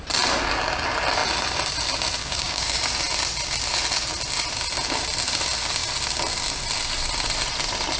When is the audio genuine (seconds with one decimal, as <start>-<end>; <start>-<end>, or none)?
0.0-2.2; 2.8-8.0